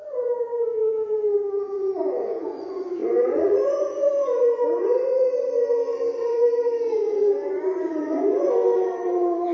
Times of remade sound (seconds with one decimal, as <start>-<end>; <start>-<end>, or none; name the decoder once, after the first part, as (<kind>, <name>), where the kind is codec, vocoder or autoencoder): 0.0-9.5 (vocoder, Vocos)

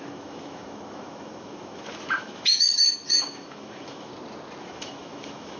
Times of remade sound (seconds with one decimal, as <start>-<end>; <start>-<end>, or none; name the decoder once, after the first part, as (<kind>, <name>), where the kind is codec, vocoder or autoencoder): 0.0-4.1 (autoencoder, DAC-VAE); 4.6-5.6

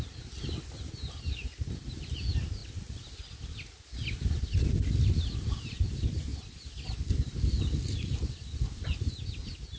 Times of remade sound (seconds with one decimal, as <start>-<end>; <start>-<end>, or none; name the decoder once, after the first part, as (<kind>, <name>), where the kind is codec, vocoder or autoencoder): none

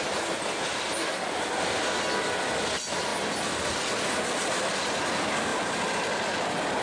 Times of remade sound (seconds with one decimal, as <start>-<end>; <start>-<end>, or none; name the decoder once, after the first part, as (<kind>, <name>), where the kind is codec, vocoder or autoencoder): none